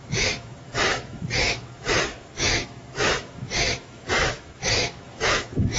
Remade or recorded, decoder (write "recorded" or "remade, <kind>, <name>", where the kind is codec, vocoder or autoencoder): remade, autoencoder, DAC-VAE